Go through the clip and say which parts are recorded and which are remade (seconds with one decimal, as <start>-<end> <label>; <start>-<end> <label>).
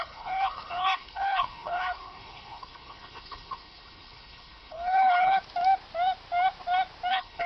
0.0-5.4 remade; 5.4-7.1 recorded; 7.1-7.5 remade